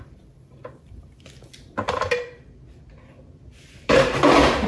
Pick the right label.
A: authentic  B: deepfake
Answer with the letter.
B